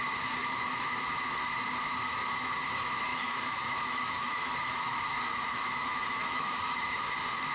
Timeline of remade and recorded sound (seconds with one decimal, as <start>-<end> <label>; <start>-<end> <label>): 0.0-0.4 recorded; 0.4-1.0 remade; 1.0-3.1 recorded; 3.1-7.1 remade; 7.1-7.5 recorded